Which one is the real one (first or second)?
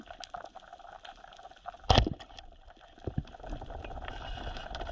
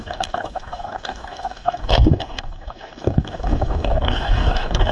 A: first